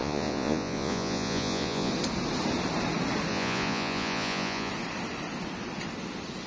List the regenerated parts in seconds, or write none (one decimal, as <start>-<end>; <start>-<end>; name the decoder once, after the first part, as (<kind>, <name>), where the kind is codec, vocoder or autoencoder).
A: 0.0-1.9 (vocoder, Vocos); 3.3-4.7